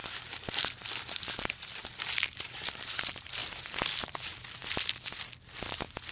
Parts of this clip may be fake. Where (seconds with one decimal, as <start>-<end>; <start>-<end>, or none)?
0.0-3.4; 4.0-6.1